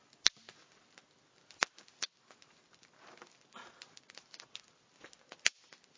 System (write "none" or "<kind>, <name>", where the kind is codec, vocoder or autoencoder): none